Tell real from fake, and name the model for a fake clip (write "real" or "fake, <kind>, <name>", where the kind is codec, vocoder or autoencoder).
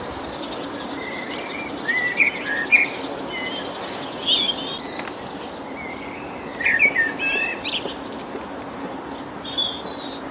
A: real